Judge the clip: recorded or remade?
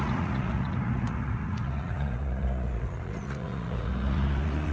remade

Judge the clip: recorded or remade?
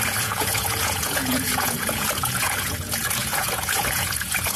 remade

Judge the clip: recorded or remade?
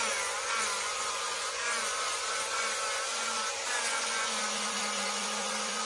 remade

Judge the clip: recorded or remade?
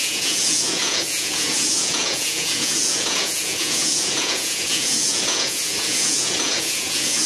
remade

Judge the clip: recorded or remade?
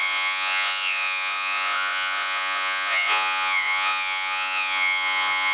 remade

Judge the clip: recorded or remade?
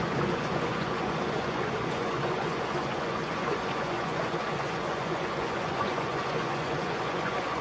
remade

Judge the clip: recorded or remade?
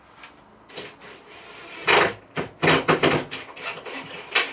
recorded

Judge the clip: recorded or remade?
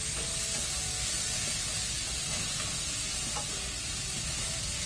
recorded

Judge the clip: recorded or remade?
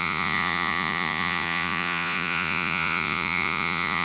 remade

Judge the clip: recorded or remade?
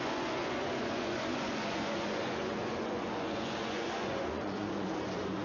remade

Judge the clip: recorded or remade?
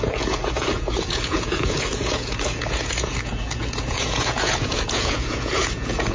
remade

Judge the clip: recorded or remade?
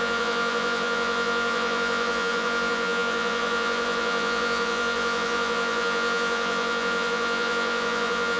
remade